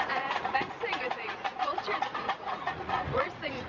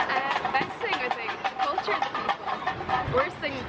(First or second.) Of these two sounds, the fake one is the first